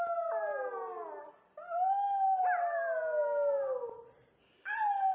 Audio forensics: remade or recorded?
recorded